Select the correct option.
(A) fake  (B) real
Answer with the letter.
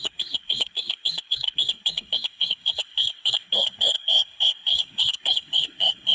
A